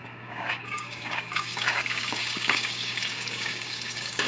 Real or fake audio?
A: fake